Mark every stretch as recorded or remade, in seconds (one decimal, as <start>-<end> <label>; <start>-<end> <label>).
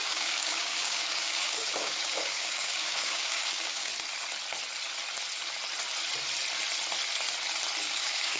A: 0.0-3.9 remade; 3.9-7.8 recorded; 7.8-8.4 remade